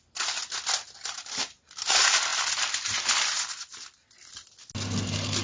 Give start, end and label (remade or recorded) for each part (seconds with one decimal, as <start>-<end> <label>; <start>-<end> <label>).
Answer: 0.0-5.4 recorded

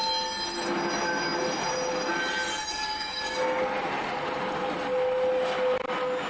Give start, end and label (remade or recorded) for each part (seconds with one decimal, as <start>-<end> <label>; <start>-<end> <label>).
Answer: 0.0-2.7 recorded; 2.7-3.6 remade; 3.6-6.3 recorded

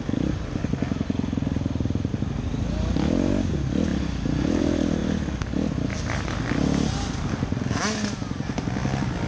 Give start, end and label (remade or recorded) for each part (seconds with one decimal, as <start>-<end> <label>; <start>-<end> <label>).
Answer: 0.0-9.3 recorded

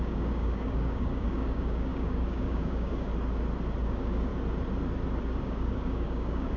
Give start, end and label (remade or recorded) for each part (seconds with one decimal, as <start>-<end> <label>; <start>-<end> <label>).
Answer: 0.0-3.1 remade; 3.1-3.8 recorded; 3.8-4.3 remade; 4.3-5.4 recorded; 5.4-6.6 remade

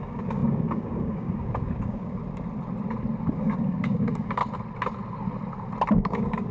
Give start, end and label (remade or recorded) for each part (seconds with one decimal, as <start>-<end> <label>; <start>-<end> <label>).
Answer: 0.0-2.2 remade; 2.2-3.3 recorded; 3.3-4.4 remade; 4.4-5.9 recorded; 5.9-6.5 remade

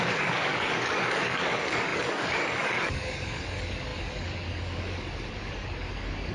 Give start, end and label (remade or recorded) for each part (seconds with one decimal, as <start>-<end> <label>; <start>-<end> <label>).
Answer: 0.0-6.3 remade

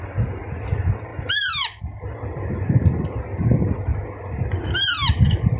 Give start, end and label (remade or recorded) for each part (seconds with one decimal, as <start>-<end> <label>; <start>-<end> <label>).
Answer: 0.0-5.6 recorded